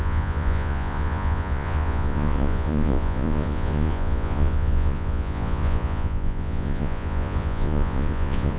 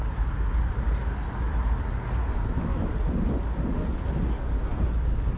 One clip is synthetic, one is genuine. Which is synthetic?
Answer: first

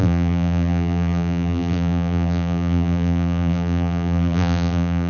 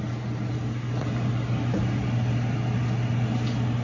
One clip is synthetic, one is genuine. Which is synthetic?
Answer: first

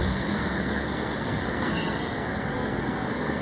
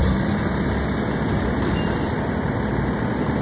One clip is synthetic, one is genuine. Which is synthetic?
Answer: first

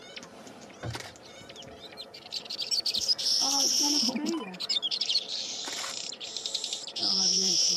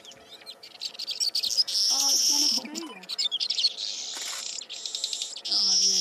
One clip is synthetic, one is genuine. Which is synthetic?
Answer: first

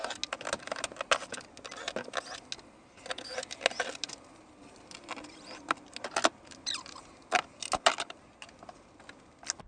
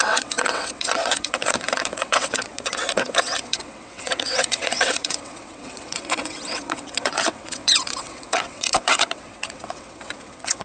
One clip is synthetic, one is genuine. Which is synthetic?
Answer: second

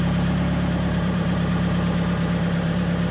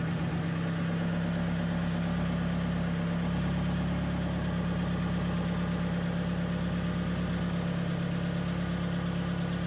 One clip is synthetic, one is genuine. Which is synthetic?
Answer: first